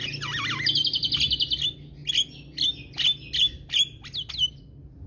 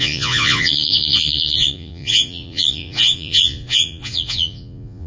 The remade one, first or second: second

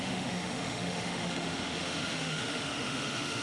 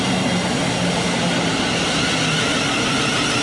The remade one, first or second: first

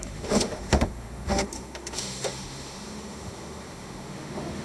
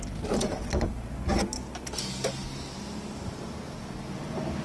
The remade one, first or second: first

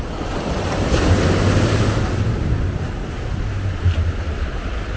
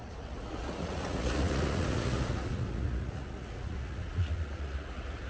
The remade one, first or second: second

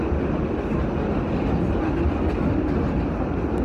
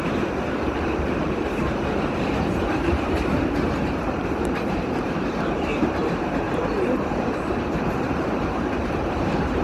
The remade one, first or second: second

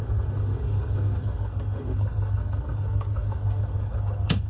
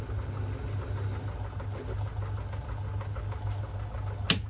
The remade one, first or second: first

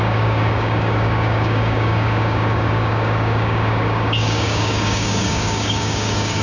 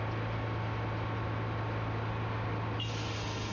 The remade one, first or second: first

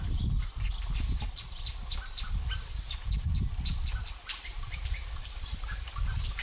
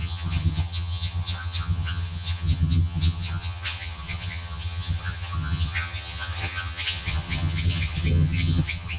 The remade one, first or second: second